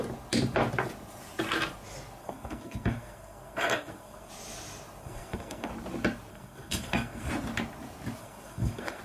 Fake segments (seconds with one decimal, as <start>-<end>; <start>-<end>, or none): 2.2-4.3; 5.0-5.7; 6.3-7.3; 8.2-9.0